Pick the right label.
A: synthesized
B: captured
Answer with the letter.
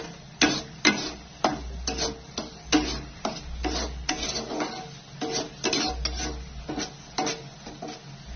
B